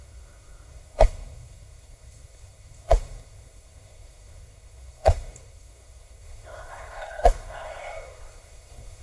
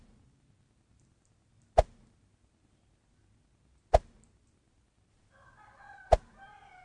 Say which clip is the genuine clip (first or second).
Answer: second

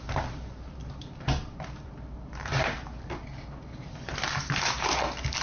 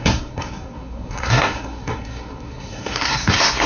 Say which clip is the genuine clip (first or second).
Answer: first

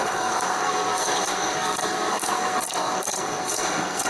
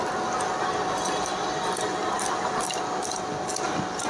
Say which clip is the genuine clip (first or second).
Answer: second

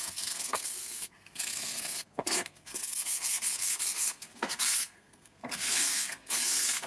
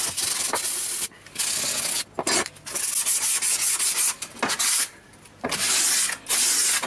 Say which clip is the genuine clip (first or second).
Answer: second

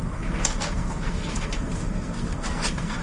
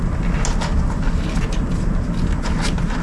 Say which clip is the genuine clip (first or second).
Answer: second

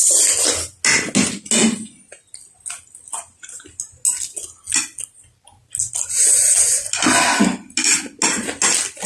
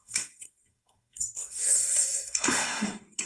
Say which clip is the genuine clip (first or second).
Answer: first